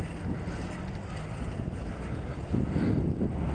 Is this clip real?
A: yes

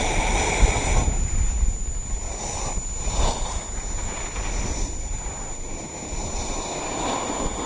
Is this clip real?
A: yes